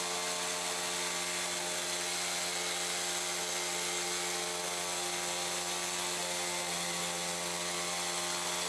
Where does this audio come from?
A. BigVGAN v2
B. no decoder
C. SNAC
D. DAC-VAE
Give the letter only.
B